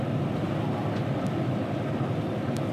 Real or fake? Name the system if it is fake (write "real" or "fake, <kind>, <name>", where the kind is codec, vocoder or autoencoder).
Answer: real